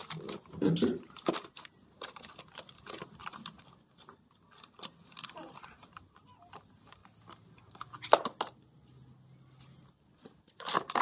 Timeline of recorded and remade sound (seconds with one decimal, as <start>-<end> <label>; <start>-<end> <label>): 0.0-2.3 remade; 2.3-11.0 recorded